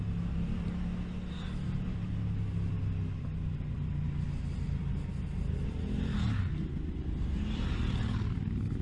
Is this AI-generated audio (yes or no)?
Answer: no